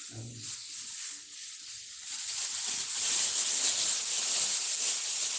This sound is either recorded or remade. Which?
recorded